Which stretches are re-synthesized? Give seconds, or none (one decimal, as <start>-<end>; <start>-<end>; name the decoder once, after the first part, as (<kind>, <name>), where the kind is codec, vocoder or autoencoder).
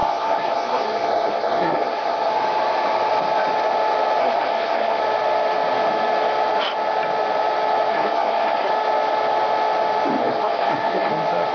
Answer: 0.0-2.3 (codec, SNAC); 4.2-5.0; 7.9-8.7; 10.2-11.1